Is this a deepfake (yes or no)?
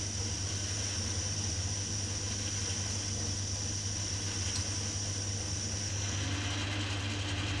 no